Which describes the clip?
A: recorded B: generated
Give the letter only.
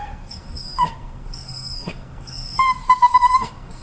B